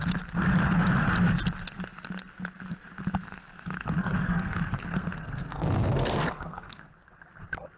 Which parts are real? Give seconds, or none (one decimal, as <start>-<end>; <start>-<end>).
0.0-3.2; 6.9-7.8

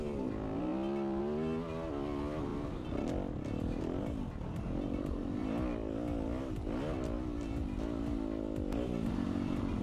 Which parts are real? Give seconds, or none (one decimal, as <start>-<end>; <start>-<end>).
0.0-9.8

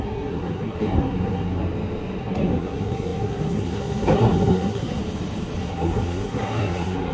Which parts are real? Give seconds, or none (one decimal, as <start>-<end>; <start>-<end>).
1.6-2.2; 5.0-5.6

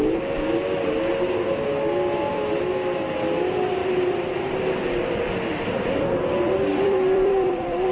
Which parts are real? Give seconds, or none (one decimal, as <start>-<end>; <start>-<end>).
0.0-3.8; 4.6-6.7

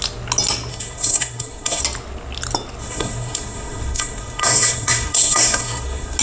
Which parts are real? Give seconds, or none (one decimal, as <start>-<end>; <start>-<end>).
0.0-0.7; 1.8-2.8

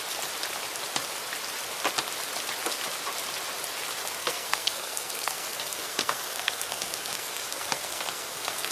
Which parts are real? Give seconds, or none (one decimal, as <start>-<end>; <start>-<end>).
0.0-4.2

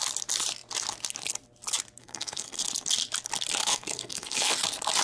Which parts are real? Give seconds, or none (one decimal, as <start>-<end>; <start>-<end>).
0.0-2.0; 2.6-3.6; 4.5-5.0